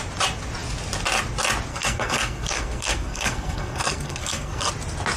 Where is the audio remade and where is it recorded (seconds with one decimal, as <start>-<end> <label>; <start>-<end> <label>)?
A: 0.0-1.7 recorded; 1.7-4.7 remade; 4.7-5.2 recorded